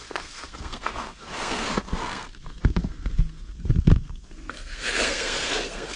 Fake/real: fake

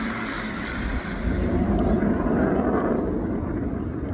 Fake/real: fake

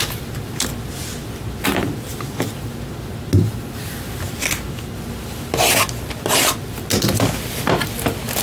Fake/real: real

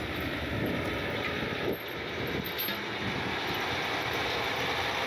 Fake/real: real